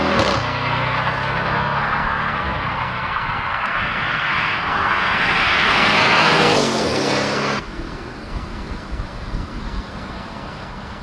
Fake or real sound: fake